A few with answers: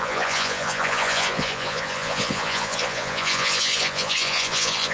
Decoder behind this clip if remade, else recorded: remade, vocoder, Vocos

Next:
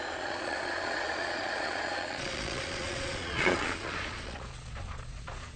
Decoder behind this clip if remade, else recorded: remade, vocoder, Vocos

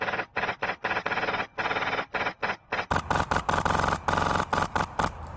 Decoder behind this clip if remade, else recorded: recorded